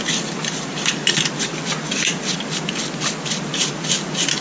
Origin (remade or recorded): recorded